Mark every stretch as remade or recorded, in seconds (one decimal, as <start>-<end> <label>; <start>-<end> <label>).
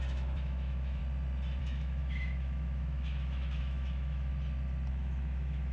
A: 0.0-1.0 remade; 1.0-1.6 recorded; 1.6-4.3 remade; 4.3-4.9 recorded; 4.9-5.7 remade